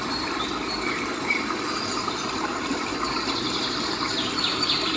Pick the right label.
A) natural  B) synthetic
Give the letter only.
A